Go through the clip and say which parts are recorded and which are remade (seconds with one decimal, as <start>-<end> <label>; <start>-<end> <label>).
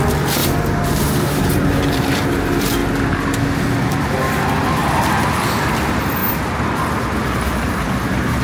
0.0-2.8 remade; 2.8-4.0 recorded; 4.0-4.8 remade; 4.8-5.5 recorded; 5.5-6.2 remade; 6.2-7.0 recorded; 7.0-8.4 remade